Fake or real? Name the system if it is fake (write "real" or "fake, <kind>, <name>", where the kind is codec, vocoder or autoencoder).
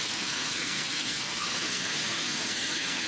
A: fake, codec, SNAC